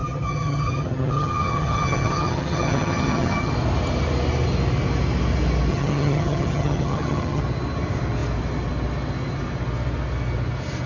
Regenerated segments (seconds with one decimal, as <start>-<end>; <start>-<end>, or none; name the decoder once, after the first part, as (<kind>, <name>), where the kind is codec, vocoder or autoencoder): 0.0-3.5 (vocoder, HiFi-GAN); 5.7-7.4